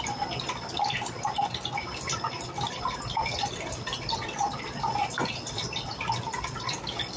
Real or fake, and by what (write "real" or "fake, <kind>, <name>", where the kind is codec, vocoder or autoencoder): real